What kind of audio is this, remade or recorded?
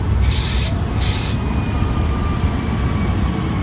recorded